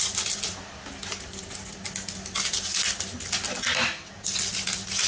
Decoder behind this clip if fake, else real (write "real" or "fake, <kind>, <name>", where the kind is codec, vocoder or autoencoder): real